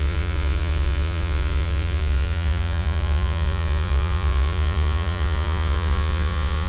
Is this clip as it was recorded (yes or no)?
no